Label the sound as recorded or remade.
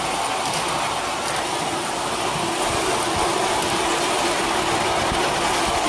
recorded